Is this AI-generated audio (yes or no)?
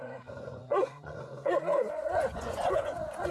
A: yes